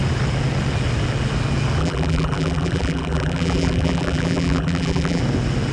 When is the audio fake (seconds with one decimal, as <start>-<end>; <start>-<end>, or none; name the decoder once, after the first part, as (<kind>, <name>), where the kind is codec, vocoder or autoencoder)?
1.8-5.2 (vocoder, BigVGAN v2)

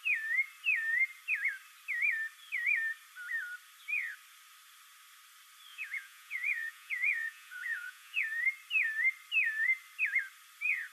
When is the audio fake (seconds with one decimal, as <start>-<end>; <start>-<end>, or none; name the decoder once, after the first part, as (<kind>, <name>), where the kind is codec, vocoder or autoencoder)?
5.7-8.2 (vocoder, Vocos)

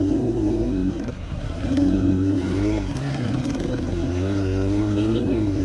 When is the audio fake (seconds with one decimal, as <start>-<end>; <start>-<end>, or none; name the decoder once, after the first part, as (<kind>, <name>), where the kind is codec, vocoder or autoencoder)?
0.0-5.6 (codec, SNAC)

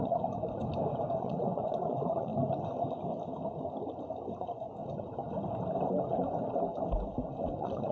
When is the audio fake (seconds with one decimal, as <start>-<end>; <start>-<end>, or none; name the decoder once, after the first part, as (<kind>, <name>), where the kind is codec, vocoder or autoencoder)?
0.0-0.6 (vocoder, Vocos); 1.2-2.3; 4.3-4.8; 7.4-7.9

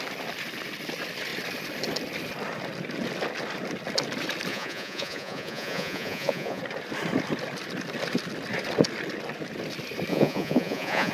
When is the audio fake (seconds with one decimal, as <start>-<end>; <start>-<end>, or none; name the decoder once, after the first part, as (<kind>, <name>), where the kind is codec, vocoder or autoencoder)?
4.5-6.6 (vocoder, Vocos); 10.1-11.1

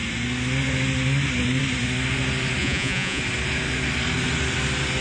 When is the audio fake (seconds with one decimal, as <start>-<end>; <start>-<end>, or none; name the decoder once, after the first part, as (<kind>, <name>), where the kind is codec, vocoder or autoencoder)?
2.6-3.2 (vocoder, Vocos)